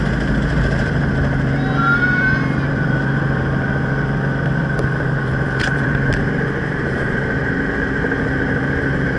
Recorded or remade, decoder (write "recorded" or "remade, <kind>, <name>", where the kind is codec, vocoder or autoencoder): remade, vocoder, BigVGAN v2